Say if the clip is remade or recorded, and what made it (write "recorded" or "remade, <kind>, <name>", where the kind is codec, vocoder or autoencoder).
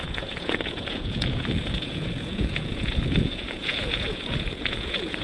remade, vocoder, Vocos